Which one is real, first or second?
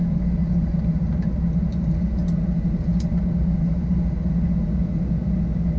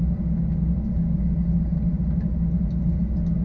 second